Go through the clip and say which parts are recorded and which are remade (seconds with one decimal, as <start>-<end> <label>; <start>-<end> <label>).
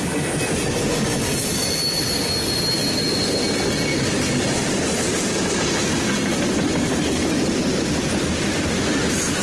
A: 0.0-4.6 recorded; 4.6-5.5 remade; 5.5-7.7 recorded; 7.7-8.7 remade; 8.7-9.4 recorded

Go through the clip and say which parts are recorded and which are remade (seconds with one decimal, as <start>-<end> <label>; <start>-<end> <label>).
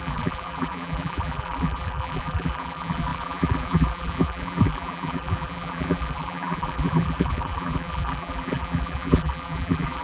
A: 0.0-10.0 remade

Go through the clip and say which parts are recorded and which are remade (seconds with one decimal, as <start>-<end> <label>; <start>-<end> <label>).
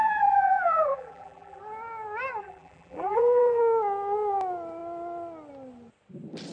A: 0.0-1.6 remade; 1.6-2.4 recorded; 2.4-3.6 remade; 3.6-6.5 recorded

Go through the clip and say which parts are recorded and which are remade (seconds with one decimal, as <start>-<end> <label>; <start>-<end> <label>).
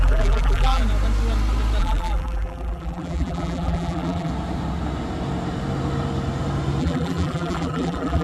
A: 0.0-0.8 remade; 0.8-1.8 recorded; 1.8-4.3 remade; 4.3-6.8 recorded; 6.8-8.2 remade